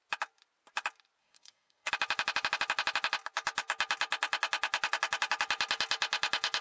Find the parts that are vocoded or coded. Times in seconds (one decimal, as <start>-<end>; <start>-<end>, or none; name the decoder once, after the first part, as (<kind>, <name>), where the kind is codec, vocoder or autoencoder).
1.2-1.9 (codec, SNAC)